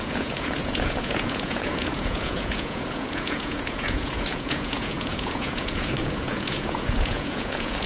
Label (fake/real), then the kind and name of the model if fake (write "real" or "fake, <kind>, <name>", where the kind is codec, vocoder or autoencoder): fake, vocoder, Vocos